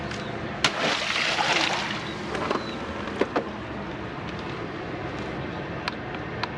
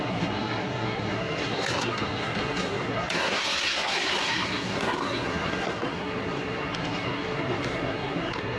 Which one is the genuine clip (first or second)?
first